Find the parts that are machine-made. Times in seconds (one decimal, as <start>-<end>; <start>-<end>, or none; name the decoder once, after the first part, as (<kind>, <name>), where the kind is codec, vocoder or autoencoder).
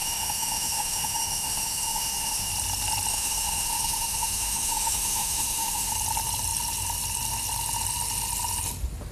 0.0-2.5 (autoencoder, DAC-VAE); 3.1-5.9